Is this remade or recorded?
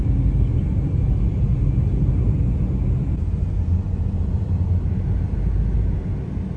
recorded